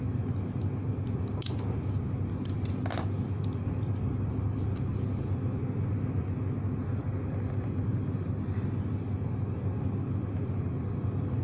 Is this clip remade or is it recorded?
recorded